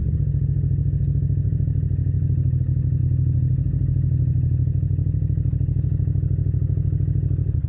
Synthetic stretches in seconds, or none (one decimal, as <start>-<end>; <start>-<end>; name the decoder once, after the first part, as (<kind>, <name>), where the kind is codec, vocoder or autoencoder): none